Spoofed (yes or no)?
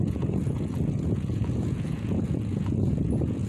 yes